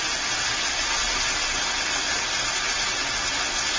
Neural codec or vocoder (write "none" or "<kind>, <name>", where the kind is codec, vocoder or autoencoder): none